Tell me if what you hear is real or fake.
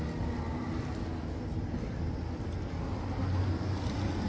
real